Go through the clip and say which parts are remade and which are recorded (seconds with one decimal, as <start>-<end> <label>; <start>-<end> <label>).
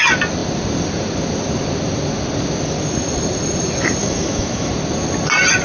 0.0-4.0 recorded; 4.0-4.7 remade; 4.7-5.6 recorded